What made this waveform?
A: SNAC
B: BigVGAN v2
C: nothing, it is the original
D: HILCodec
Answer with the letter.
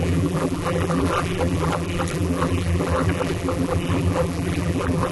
B